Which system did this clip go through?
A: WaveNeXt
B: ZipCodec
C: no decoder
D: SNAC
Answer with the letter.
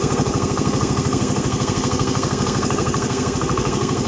D